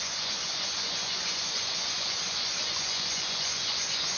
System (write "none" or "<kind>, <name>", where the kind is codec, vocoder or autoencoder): vocoder, Vocos